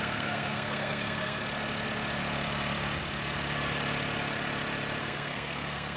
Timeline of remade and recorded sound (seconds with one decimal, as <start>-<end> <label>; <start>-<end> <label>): 0.0-1.4 remade; 1.4-5.0 recorded; 5.0-6.0 remade